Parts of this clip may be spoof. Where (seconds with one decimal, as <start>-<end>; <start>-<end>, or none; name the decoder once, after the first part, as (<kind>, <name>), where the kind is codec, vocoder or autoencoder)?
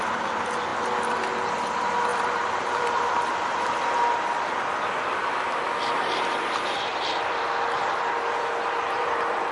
2.1-3.3 (vocoder, BigVGAN v2)